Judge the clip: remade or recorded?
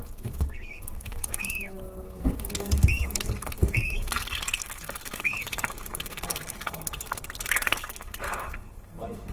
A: remade